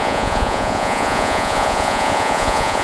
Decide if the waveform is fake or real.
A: fake